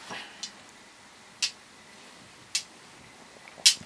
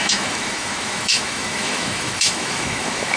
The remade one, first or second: second